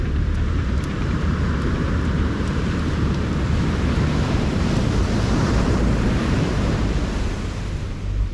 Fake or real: fake